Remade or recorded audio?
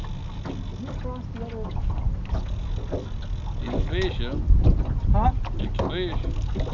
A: recorded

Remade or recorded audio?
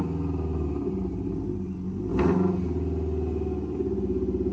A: recorded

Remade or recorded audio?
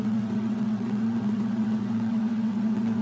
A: remade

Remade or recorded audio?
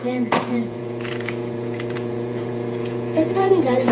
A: remade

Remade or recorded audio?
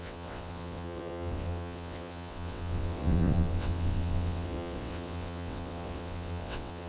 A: remade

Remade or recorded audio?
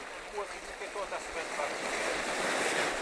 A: recorded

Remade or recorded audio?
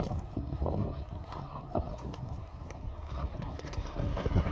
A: remade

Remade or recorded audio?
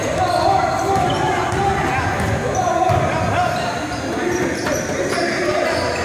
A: recorded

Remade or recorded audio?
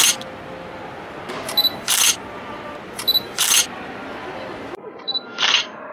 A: remade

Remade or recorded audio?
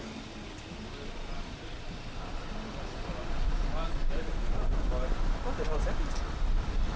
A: recorded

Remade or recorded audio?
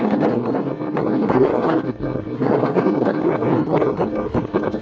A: remade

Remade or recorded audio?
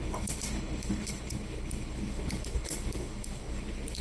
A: remade